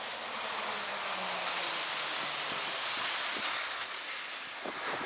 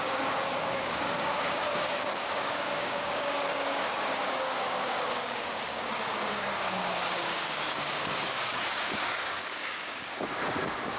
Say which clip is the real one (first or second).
first